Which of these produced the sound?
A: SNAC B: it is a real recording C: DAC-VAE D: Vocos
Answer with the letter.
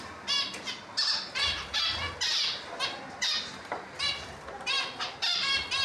B